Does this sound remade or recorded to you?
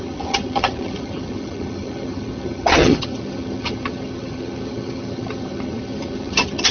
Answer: remade